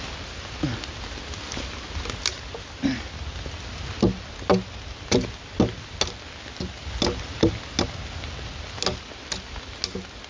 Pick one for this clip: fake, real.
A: real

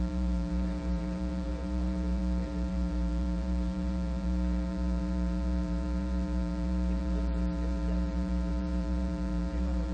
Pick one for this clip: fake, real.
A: fake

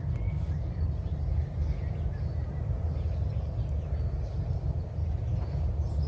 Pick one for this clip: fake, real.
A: real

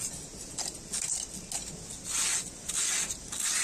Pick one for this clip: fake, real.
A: real